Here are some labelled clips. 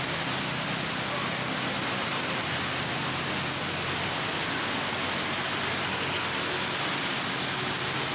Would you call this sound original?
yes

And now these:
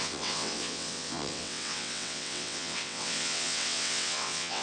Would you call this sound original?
no